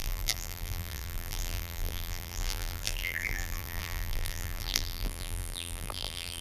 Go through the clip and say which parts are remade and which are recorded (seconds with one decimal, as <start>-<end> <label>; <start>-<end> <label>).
0.0-6.4 remade